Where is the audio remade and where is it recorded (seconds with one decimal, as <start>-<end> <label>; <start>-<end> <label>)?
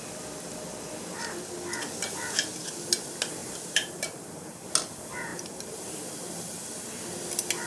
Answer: 0.0-3.4 recorded; 3.4-4.7 remade; 4.7-5.3 recorded; 5.3-6.0 remade; 6.0-7.7 recorded